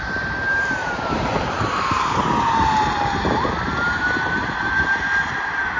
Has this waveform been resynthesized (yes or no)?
no